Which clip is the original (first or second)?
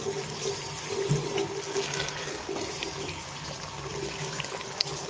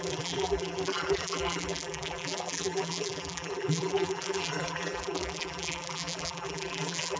first